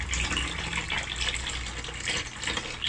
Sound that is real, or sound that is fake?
real